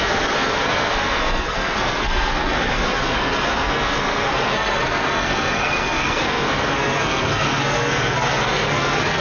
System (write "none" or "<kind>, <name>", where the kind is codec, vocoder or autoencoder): codec, SNAC